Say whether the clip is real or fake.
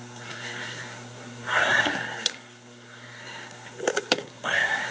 fake